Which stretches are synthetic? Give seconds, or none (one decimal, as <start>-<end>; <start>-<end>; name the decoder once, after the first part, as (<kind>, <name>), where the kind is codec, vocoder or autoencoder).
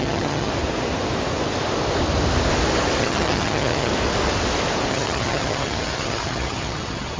0.0-0.5 (vocoder, HiFi-GAN); 3.0-3.9; 4.9-7.2